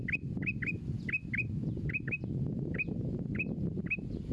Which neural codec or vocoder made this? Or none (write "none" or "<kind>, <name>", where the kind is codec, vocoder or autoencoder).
none